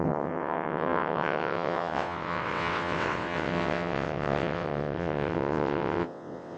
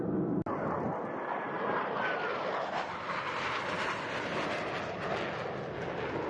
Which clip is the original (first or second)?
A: second